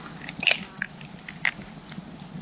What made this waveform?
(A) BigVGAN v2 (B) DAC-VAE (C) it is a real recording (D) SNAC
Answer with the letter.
C